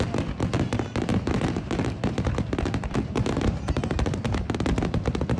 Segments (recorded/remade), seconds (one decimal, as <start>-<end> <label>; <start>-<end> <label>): 0.0-1.1 recorded; 1.1-4.3 remade; 4.3-5.4 recorded